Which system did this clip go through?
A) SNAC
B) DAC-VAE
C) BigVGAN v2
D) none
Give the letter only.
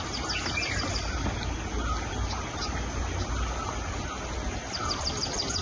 D